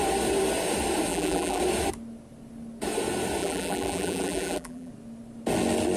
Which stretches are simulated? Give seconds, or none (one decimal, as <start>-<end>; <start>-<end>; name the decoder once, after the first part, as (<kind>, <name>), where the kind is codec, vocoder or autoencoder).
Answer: 1.1-1.6 (vocoder, BigVGAN v2); 3.4-4.9